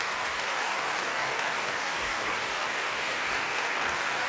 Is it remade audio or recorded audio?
remade